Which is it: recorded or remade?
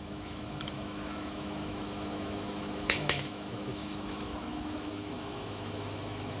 remade